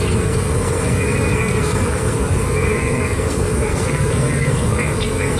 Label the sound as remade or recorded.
remade